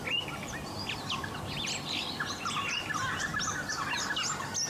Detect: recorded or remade recorded